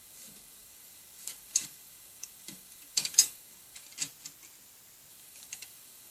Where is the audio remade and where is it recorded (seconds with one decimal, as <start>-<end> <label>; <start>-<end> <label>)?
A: 0.0-3.9 remade; 3.9-5.1 recorded; 5.1-6.1 remade